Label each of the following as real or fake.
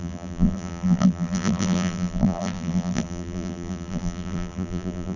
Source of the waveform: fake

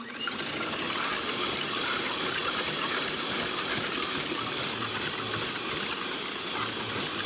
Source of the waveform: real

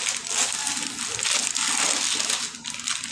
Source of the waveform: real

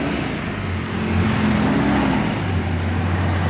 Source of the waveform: real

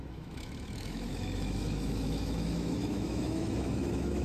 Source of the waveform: fake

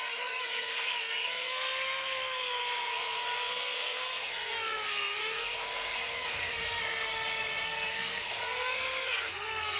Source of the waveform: fake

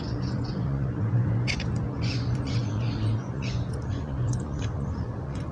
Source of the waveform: fake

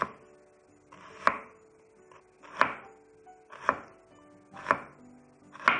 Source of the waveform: real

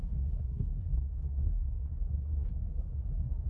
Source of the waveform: fake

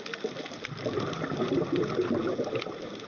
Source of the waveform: real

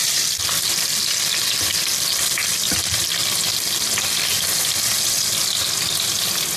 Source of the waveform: real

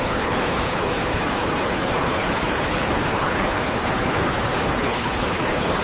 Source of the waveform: fake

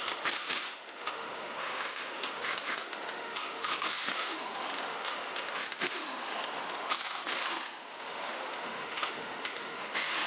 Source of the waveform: fake